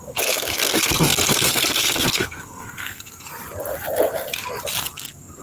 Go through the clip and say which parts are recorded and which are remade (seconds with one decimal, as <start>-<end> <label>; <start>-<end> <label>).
0.0-3.3 remade; 3.3-4.8 recorded; 4.8-5.4 remade